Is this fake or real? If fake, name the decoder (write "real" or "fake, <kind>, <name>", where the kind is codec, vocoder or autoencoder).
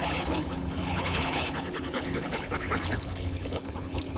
fake, codec, HILCodec